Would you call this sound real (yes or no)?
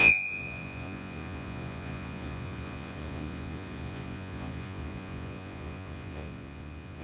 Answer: no